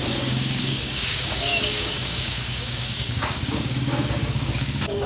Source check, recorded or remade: remade